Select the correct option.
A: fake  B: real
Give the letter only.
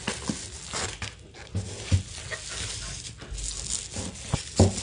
B